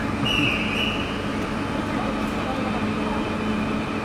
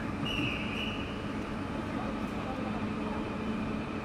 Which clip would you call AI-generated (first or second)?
second